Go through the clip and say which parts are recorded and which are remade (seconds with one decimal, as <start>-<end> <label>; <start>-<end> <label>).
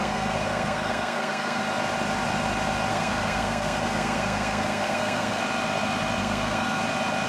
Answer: 0.0-1.6 remade; 1.6-2.9 recorded; 2.9-5.4 remade; 5.4-6.2 recorded; 6.2-6.8 remade; 6.8-7.3 recorded